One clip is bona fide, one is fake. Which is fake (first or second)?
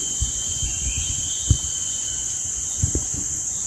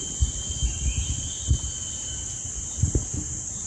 first